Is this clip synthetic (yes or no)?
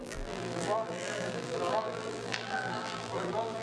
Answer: yes